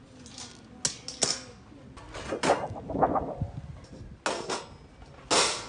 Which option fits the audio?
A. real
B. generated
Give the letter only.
A